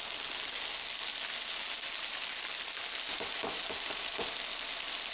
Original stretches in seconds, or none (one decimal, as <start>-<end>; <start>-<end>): 0.0-5.1